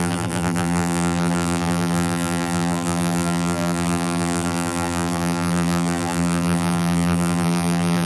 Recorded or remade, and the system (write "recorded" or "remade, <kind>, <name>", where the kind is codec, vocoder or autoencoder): remade, vocoder, BigVGAN v2